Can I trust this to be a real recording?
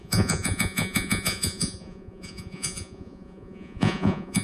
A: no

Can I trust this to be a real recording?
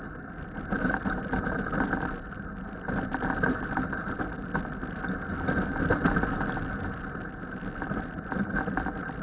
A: yes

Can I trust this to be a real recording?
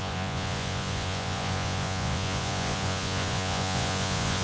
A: no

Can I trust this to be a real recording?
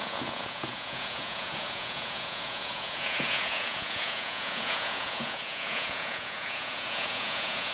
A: no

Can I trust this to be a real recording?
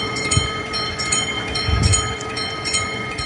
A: no